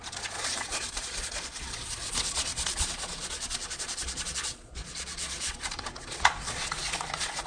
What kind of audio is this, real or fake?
fake